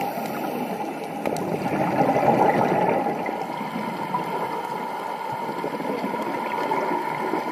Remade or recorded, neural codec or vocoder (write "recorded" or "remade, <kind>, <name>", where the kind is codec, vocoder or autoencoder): recorded